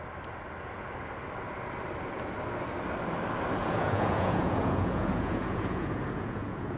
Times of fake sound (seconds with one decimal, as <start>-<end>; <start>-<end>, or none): 3.6-6.8

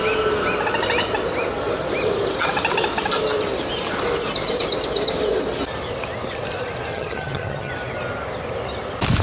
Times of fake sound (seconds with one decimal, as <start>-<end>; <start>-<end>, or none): 6.9-7.7

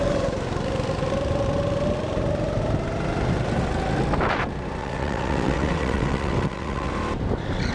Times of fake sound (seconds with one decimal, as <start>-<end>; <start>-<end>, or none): 4.8-6.9

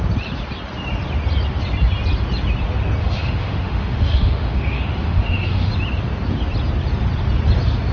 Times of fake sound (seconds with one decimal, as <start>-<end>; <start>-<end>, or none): 3.0-5.7

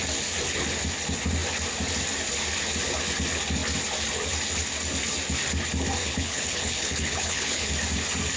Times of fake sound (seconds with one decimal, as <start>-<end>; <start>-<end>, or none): 6.0-7.7

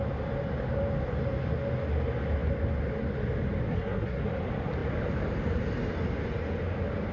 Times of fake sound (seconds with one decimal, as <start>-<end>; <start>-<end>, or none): 3.7-4.2

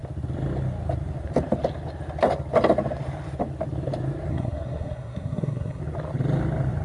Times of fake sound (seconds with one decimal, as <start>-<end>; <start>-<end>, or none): 4.3-5.8